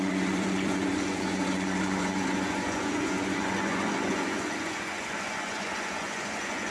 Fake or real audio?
fake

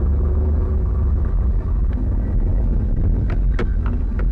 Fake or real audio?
real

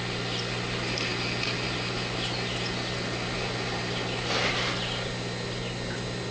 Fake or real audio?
real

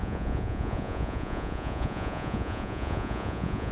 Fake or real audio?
fake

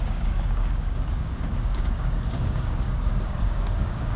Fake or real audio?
fake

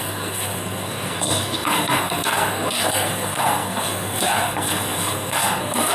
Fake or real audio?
fake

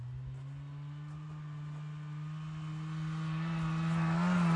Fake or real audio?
real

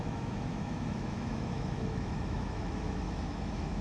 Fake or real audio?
fake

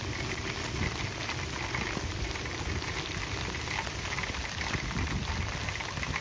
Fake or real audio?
real